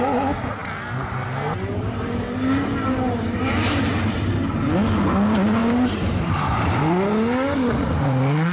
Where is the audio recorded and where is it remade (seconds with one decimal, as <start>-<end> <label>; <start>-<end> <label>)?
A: 0.0-5.6 recorded; 5.6-6.8 remade; 6.8-8.5 recorded